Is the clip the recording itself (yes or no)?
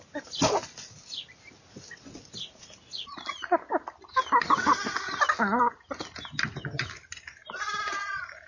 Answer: yes